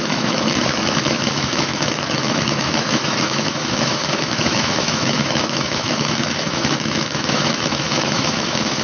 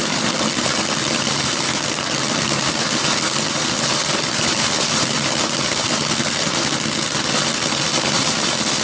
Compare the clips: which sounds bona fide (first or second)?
second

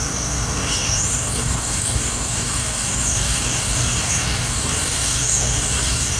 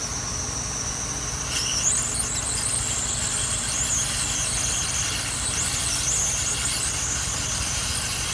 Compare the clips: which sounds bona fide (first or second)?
second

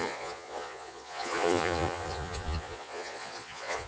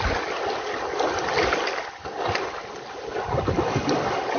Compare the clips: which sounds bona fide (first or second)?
second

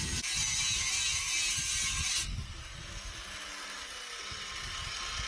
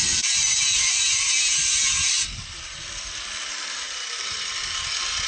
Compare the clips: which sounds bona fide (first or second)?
first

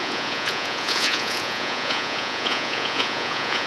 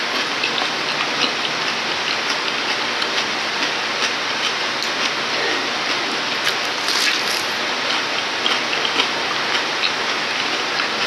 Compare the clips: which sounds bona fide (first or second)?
second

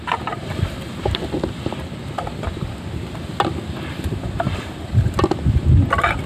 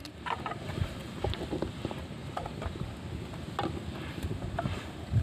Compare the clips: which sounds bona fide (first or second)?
second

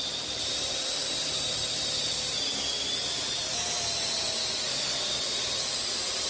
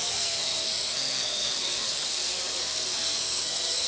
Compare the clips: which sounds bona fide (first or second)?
first